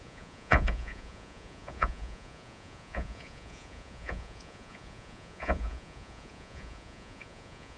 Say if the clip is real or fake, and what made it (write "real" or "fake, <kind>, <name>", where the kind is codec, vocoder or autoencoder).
fake, vocoder, Vocos